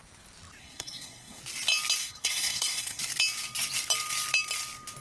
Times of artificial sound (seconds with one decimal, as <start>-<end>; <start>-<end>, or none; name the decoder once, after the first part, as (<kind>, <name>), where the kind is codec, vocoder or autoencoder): 0.6-1.4 (codec, SNAC); 2.0-3.0